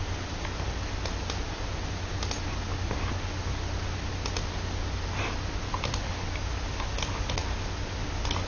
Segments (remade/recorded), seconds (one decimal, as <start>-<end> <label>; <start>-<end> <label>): 0.0-8.5 recorded